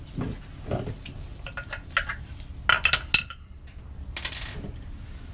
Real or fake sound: real